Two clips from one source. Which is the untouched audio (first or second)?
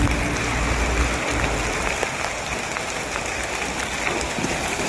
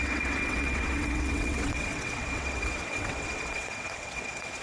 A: first